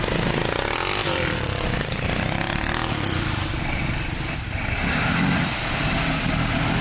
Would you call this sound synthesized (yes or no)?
yes